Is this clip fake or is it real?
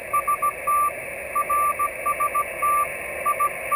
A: real